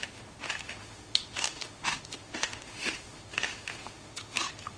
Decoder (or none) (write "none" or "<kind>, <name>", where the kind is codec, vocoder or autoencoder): autoencoder, DAC-VAE